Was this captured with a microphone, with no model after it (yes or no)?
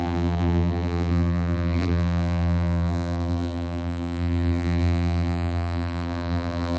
no